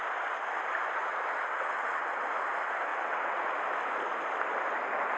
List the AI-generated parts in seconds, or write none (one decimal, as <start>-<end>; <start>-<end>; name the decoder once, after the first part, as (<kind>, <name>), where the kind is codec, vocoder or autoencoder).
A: 1.0-2.2 (vocoder, WaveNeXt); 2.9-3.4